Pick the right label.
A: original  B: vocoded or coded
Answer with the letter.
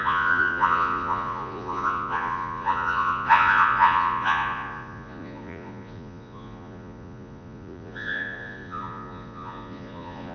B